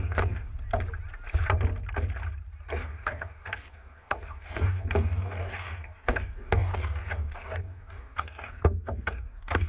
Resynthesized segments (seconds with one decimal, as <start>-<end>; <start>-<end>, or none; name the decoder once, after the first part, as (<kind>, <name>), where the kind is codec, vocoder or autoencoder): 0.0-0.5 (codec, DAC); 2.7-9.7